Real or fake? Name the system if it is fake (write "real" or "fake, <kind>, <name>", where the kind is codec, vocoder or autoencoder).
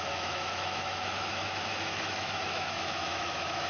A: fake, autoencoder, DAC-VAE